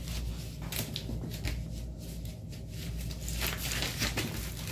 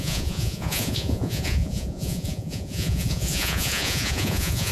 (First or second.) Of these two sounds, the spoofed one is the second